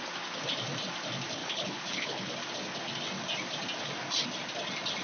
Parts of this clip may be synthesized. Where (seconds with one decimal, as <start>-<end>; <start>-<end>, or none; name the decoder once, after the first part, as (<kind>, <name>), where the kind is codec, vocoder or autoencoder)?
1.4-2.3 (codec, HILCodec)